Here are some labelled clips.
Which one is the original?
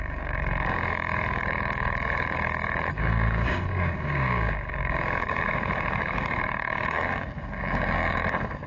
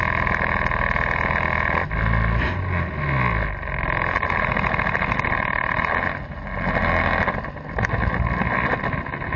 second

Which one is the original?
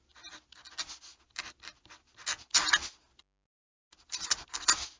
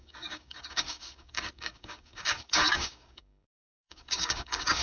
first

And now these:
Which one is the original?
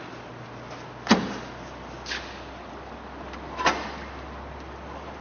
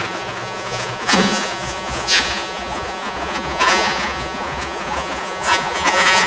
first